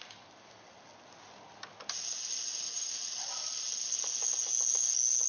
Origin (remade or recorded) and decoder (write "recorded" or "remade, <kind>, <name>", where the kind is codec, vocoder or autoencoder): recorded